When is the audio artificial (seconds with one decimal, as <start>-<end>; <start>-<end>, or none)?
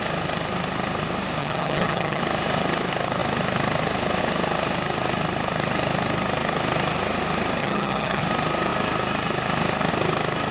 1.4-2.2; 7.6-8.2